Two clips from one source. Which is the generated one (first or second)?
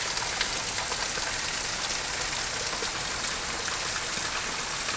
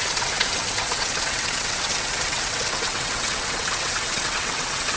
second